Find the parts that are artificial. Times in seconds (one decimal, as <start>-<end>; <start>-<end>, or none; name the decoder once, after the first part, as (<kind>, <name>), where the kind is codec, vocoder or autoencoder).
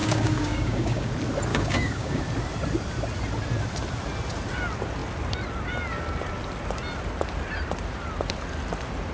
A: 0.0-1.1 (codec, DAC); 1.5-2.2